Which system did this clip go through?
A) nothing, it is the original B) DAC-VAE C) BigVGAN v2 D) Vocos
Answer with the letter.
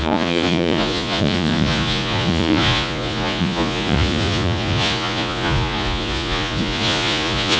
D